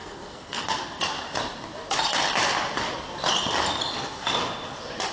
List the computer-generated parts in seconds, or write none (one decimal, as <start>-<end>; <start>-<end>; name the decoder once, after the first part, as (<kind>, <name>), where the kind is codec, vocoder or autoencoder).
0.0-1.0 (codec, SNAC)